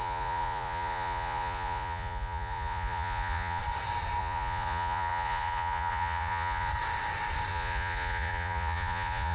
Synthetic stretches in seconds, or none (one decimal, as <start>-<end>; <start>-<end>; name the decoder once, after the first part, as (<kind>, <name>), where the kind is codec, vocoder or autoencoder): 0.0-3.6 (vocoder, Vocos); 4.2-6.7; 7.5-9.3